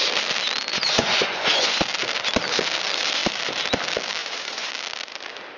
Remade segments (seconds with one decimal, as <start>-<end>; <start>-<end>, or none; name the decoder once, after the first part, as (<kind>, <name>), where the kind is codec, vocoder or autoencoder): 0.7-1.8 (vocoder, Vocos); 4.2-4.7